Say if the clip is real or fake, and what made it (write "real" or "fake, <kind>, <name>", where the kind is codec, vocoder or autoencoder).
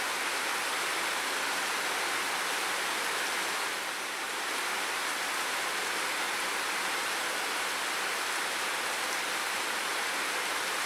real